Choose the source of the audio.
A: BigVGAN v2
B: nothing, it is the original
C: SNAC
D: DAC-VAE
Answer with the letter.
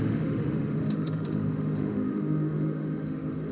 D